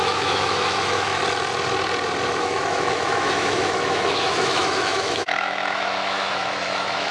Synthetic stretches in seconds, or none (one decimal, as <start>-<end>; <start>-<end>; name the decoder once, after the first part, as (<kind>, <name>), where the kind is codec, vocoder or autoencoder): 0.0-1.2 (autoencoder, DAC-VAE); 2.4-7.1